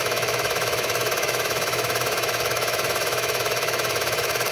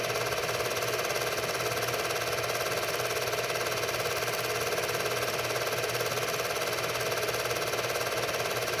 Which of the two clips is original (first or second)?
second